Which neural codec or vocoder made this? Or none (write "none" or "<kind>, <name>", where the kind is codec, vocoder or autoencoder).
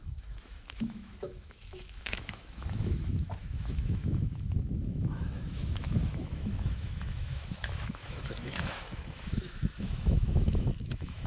autoencoder, DAC-VAE